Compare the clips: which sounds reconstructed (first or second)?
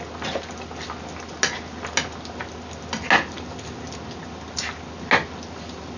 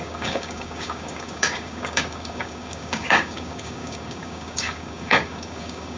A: second